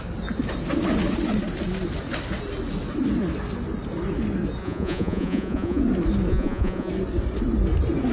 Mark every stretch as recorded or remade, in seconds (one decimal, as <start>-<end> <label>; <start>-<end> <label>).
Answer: 0.0-4.6 recorded; 4.6-5.8 remade; 5.8-6.3 recorded; 6.3-6.9 remade; 6.9-8.1 recorded